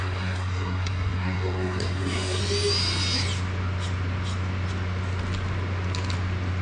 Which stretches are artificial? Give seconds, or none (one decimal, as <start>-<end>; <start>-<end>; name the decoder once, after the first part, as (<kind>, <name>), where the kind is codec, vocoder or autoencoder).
0.0-2.4 (codec, SNAC)